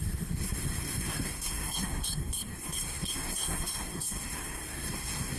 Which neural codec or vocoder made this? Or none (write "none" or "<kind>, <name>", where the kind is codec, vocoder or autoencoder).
codec, SNAC